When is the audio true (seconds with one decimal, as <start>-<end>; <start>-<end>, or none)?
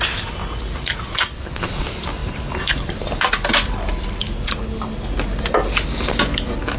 0.0-0.4; 1.0-6.8